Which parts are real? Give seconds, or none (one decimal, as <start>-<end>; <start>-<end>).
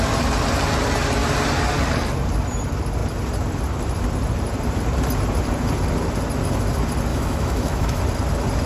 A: 0.0-7.1; 8.0-8.7